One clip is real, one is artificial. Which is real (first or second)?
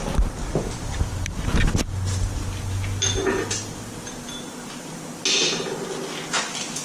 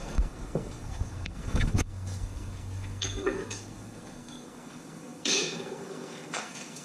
first